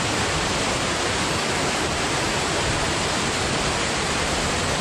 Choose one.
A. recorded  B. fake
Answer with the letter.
A